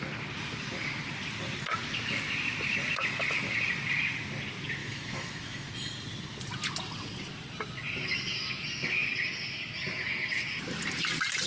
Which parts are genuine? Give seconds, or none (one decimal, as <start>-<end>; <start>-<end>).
0.0-4.8; 5.7-11.5